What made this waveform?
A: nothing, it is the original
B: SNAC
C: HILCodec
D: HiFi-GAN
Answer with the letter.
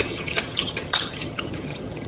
D